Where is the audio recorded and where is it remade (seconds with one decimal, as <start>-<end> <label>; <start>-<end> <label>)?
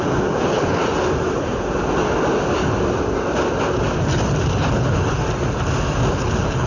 0.0-0.8 remade; 0.8-4.7 recorded; 4.7-5.2 remade; 5.2-6.1 recorded; 6.1-6.7 remade